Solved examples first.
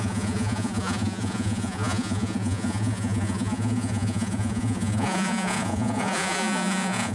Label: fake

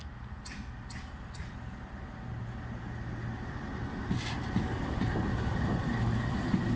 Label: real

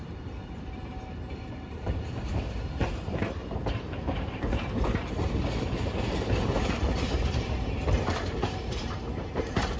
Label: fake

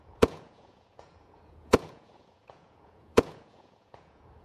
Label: fake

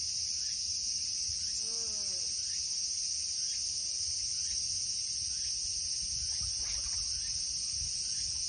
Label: real